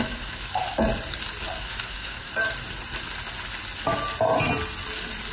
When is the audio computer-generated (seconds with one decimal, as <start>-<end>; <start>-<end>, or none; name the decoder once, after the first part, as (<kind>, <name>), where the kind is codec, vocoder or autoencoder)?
0.0-0.6 (autoencoder, DAC-VAE); 1.6-2.3